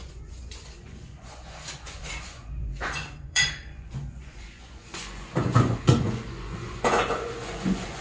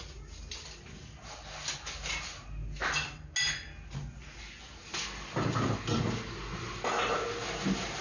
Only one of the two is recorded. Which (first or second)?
second